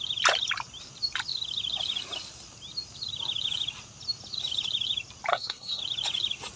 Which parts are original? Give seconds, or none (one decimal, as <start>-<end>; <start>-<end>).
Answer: 0.0-5.3; 5.8-6.6